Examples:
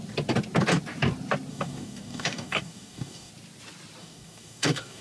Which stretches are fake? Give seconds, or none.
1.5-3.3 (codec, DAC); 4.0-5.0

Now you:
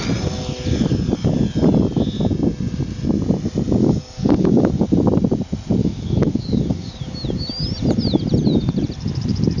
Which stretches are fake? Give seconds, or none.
3.8-4.7 (codec, DAC); 5.8-7.0

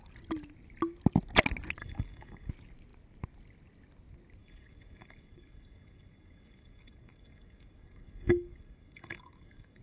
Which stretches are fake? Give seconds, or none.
1.8-2.5 (codec, DAC); 4.4-9.8

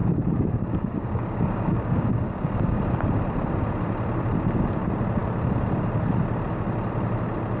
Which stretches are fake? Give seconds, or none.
0.0-2.8 (codec, DAC)

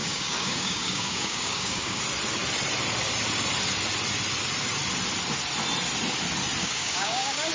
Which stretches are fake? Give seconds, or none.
0.0-2.0 (codec, DAC); 6.6-7.5

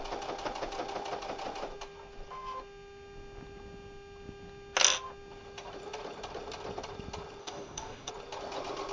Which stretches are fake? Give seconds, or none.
7.4-8.1 (codec, DAC)

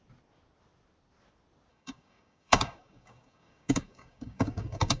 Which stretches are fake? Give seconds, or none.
1.7-5.0 (codec, DAC)